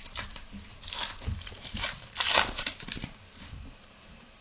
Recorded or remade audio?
remade